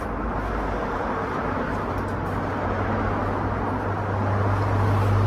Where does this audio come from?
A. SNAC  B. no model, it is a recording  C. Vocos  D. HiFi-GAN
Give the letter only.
B